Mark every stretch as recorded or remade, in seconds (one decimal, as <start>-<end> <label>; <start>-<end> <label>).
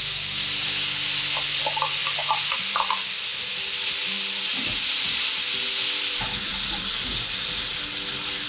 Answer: 0.0-8.5 recorded